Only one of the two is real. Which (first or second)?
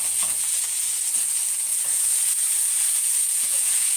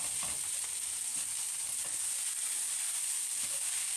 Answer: second